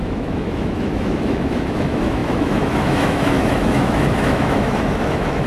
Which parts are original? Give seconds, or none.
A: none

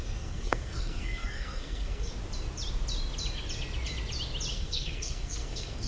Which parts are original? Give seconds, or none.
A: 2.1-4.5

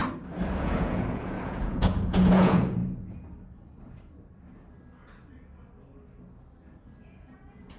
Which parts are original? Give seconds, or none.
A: 0.0-0.6; 2.8-7.0

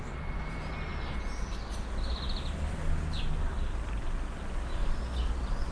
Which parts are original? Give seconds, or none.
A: 0.0-5.7

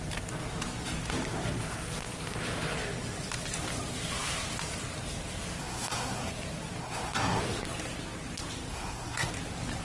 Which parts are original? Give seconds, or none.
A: 0.0-5.6; 6.3-6.8; 7.4-8.7; 9.3-9.8

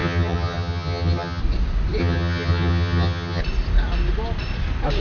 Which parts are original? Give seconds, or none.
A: 1.4-2.0; 3.4-5.0

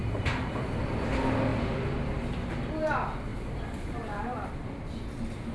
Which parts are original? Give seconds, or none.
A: 0.9-1.5; 2.7-3.3; 4.5-5.5